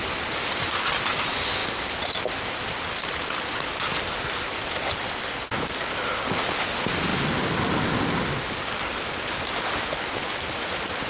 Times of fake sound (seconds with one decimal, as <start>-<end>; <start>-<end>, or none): none